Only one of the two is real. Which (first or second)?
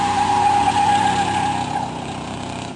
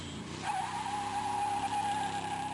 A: second